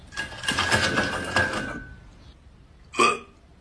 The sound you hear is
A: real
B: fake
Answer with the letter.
A